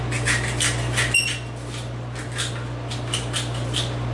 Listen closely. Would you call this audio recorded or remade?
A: recorded